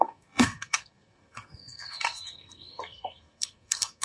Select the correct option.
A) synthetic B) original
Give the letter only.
A